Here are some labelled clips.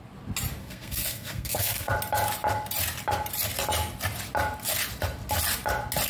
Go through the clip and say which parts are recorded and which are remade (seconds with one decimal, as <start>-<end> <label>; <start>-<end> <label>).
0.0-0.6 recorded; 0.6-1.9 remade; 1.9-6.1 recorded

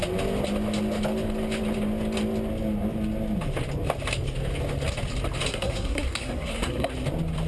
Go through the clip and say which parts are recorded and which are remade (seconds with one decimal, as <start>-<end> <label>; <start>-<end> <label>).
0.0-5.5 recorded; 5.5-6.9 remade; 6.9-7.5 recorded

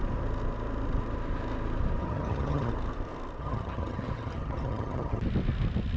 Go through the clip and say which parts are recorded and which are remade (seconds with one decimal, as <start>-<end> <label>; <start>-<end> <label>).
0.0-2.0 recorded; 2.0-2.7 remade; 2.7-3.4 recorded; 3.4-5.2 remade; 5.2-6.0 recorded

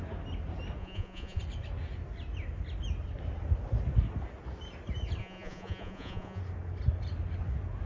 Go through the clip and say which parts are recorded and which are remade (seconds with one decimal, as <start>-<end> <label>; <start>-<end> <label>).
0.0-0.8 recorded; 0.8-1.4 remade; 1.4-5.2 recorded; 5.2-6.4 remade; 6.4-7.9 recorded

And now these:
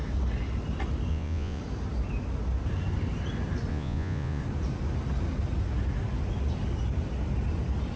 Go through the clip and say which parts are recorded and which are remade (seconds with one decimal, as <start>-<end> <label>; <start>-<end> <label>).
0.0-1.1 recorded; 1.1-1.6 remade; 1.6-3.7 recorded; 3.7-4.4 remade; 4.4-8.0 recorded

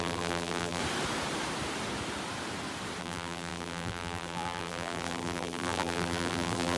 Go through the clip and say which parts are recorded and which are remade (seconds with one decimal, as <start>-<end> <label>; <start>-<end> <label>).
0.0-0.8 remade; 0.8-3.0 recorded; 3.0-6.8 remade